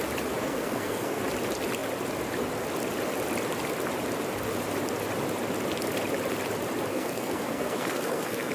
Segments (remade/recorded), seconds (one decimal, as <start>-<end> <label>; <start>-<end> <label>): 0.0-0.4 recorded; 0.4-1.2 remade; 1.2-6.9 recorded; 6.9-8.5 remade